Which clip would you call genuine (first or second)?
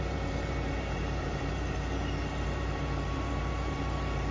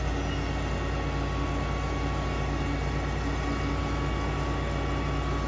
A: second